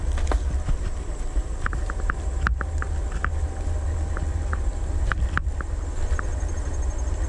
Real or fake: real